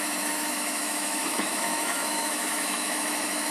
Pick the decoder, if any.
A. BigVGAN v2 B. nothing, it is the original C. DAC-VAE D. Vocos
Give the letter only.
C